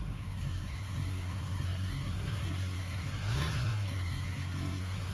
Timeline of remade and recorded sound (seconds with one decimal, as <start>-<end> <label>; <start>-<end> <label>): 0.0-5.1 remade